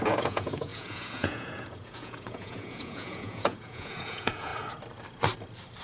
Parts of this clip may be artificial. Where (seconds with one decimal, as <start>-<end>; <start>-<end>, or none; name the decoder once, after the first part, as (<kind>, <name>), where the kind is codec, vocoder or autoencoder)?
0.0-4.5 (vocoder, Vocos)